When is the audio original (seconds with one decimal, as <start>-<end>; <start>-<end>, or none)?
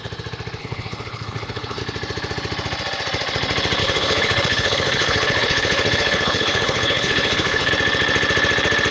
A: 0.0-0.6; 1.8-3.8; 7.7-8.9